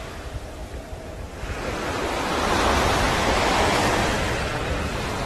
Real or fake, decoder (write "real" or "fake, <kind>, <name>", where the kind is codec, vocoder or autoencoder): real